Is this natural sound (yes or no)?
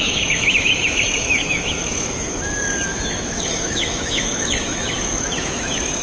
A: no